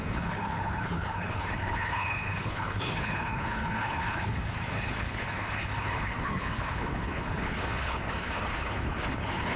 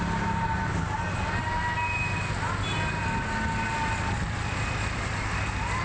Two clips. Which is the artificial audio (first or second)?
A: first